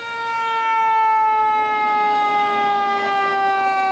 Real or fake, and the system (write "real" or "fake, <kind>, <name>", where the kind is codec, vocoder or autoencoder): fake, autoencoder, DAC-VAE